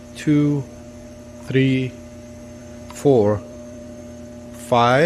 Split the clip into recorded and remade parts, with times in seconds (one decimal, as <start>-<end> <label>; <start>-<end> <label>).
0.0-2.6 recorded; 2.6-4.0 remade; 4.0-5.1 recorded